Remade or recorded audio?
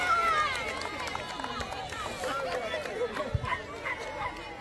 recorded